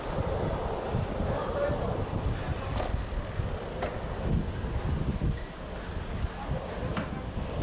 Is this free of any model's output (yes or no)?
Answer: yes